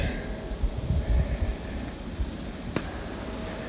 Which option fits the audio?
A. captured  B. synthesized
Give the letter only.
A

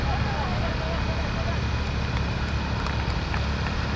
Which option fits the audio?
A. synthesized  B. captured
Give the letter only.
B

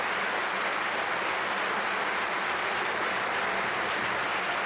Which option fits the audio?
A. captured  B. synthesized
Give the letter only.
A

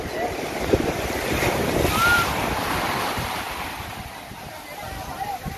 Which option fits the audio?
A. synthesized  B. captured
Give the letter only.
B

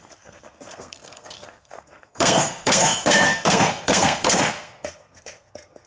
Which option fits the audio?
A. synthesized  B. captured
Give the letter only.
A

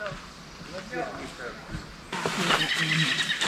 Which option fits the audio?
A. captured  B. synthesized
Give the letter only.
A